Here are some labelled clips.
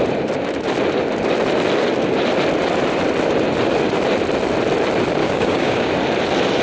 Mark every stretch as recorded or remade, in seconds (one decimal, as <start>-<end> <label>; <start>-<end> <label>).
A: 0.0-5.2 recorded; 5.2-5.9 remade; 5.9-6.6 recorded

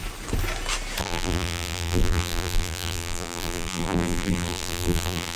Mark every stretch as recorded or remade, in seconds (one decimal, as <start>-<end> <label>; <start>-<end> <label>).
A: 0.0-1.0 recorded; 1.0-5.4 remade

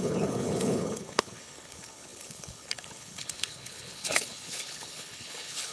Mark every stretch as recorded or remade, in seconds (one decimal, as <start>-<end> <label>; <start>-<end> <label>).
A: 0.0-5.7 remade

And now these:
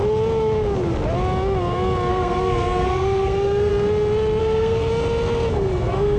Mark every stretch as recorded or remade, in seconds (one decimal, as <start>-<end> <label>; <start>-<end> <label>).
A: 0.0-2.1 recorded; 2.1-3.7 remade; 3.7-4.4 recorded; 4.4-4.9 remade; 4.9-5.5 recorded; 5.5-6.2 remade